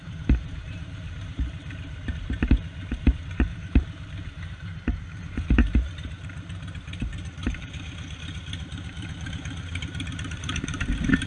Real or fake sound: fake